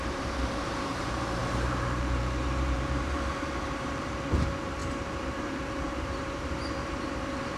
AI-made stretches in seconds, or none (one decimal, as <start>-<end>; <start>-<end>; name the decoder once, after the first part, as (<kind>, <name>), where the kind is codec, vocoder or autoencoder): 0.0-7.6 (vocoder, BigVGAN v2)